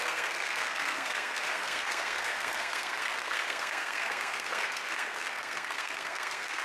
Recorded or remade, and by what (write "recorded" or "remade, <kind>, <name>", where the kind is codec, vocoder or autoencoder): remade, codec, SNAC